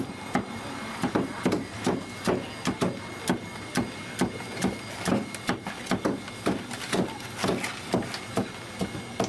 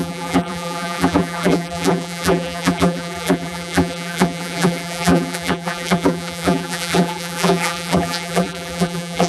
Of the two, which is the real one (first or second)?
first